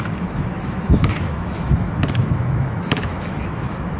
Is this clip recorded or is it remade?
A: remade